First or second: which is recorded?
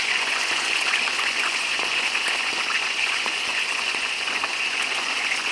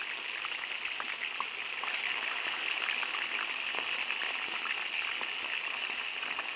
second